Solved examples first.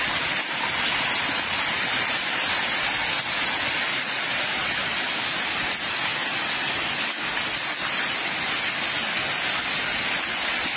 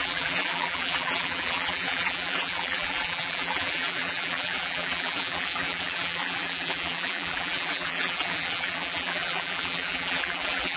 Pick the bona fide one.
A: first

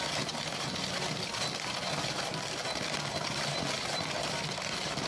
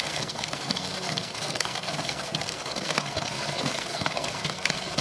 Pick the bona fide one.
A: first